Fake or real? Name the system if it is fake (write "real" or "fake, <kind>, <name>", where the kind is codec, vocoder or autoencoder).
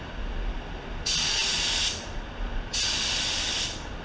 real